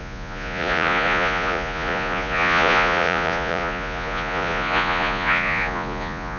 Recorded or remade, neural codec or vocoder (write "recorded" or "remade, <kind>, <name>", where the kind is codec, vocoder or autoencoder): remade, vocoder, Vocos